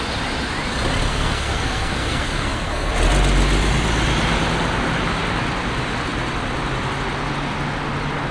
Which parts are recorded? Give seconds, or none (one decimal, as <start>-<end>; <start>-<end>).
0.0-1.1; 2.9-8.3